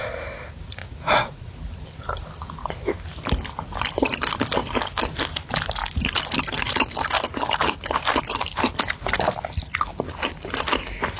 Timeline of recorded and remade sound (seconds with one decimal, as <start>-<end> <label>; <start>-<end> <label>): 0.0-0.8 recorded; 0.8-1.5 remade; 1.5-11.2 recorded